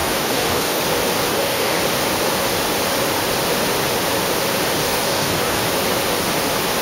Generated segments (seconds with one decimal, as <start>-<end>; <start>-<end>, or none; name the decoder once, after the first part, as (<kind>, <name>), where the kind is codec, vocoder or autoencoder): 0.0-0.8 (codec, DAC); 1.3-1.8; 4.8-5.6